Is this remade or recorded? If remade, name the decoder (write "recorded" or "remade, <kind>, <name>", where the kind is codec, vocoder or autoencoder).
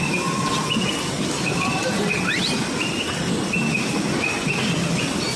recorded